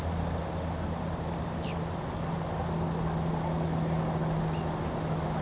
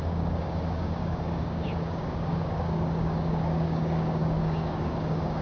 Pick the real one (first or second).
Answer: first